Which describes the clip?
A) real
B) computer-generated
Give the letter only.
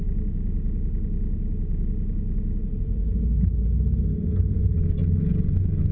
A